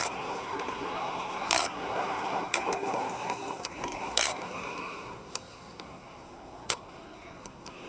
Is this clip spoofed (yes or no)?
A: yes